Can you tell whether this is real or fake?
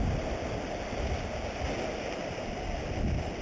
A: real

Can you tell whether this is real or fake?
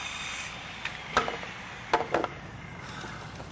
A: real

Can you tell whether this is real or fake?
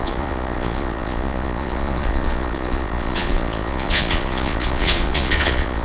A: fake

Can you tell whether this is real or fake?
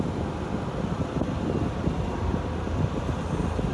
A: real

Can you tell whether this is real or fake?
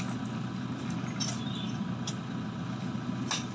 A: real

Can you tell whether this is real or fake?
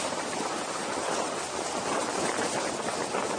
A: real